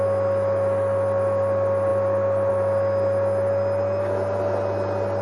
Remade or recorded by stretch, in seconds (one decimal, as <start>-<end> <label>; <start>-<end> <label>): 0.0-5.2 recorded